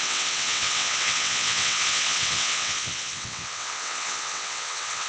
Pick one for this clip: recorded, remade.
remade